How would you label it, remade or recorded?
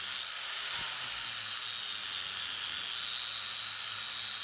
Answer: recorded